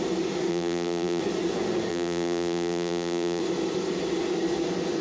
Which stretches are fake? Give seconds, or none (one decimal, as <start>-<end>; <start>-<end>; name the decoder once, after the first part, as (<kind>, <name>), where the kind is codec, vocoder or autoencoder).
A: 0.5-1.2 (vocoder, BigVGAN v2); 1.9-3.4